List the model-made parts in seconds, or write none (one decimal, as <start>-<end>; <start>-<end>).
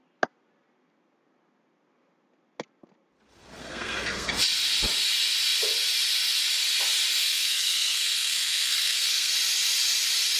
3.6-4.3; 7.2-9.3